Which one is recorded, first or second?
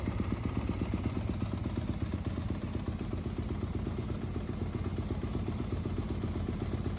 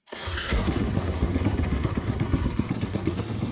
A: first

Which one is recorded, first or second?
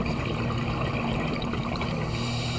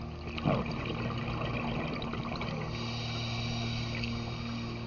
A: second